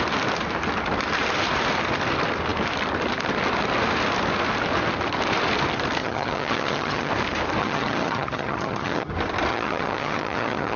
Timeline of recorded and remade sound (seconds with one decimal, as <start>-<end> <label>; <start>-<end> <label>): 0.0-6.0 recorded; 6.0-7.1 remade; 7.1-7.6 recorded; 7.6-9.1 remade; 9.1-9.5 recorded; 9.5-10.8 remade